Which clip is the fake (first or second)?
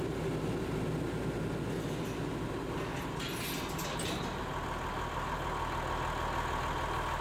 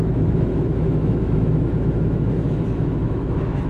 second